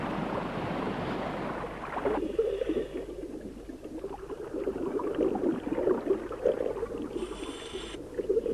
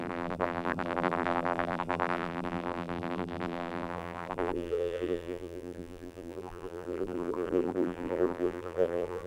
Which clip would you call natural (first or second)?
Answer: first